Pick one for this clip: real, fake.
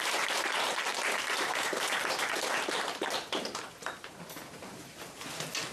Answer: fake